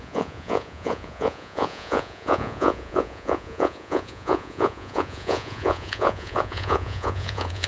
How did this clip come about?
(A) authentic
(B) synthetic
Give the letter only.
B